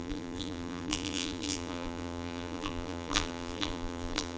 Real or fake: fake